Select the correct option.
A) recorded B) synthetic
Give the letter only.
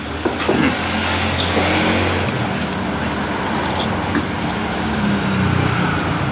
A